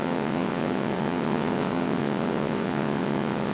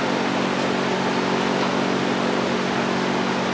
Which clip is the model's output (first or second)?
first